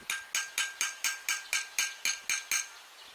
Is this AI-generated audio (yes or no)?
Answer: no